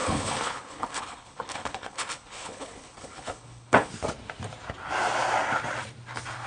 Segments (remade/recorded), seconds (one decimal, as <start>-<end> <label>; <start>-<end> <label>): 0.0-3.9 remade; 3.9-6.5 recorded